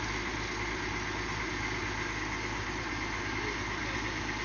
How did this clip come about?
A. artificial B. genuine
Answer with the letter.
B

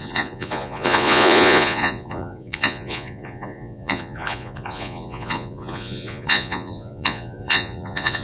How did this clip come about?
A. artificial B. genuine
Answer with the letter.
A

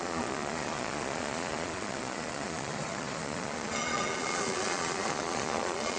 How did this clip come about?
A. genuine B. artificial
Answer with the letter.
B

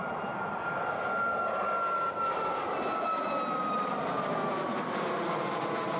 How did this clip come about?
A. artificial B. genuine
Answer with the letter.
B